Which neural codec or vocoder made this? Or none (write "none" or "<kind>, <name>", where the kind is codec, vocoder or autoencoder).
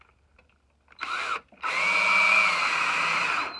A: none